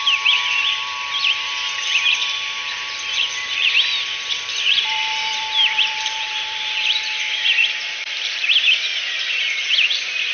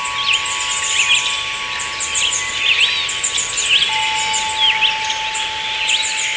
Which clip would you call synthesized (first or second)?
first